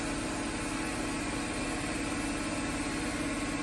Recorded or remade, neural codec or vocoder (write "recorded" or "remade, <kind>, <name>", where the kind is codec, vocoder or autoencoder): recorded